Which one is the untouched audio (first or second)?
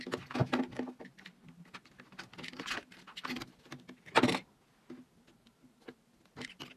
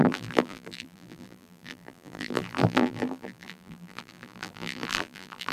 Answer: first